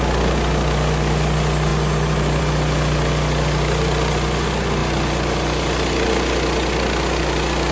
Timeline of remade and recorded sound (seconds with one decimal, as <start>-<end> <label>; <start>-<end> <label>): 0.0-7.7 recorded